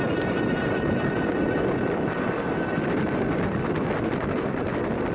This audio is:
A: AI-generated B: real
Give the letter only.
B